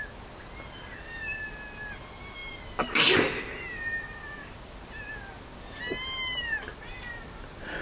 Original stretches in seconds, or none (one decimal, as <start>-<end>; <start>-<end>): 0.0-7.8